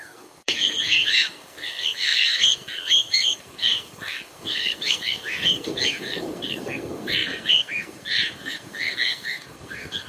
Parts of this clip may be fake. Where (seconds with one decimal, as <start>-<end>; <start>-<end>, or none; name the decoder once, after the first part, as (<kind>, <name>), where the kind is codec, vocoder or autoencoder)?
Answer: 0.0-10.1 (codec, SNAC)